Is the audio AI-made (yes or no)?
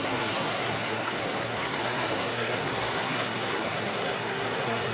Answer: yes